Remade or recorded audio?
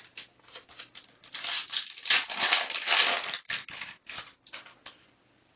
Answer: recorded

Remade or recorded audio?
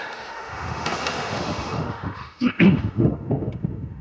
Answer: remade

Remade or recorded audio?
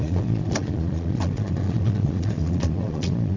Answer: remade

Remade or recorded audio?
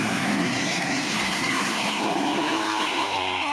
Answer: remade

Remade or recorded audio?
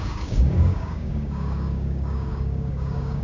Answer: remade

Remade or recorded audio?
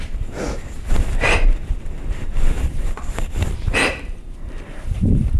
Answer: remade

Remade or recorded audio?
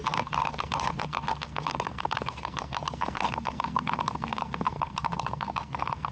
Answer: remade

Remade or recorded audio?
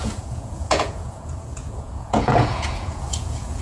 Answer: remade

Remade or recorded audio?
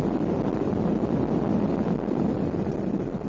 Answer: recorded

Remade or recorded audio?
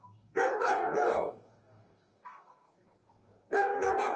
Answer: remade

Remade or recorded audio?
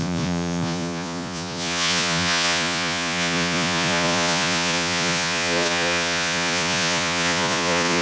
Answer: remade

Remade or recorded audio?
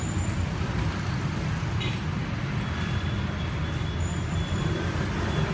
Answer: remade